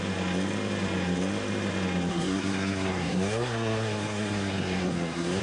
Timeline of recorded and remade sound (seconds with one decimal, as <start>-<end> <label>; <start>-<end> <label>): 0.0-2.1 recorded; 2.1-5.4 remade